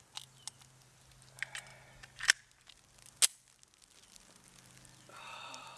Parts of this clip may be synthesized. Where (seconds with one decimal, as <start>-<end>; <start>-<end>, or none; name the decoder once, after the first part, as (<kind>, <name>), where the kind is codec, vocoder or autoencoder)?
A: none